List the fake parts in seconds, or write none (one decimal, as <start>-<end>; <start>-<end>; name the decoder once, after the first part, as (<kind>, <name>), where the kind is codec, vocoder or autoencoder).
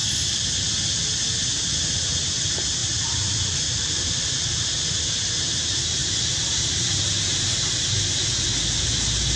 0.0-1.0 (vocoder, BigVGAN v2); 2.8-4.7; 6.0-7.0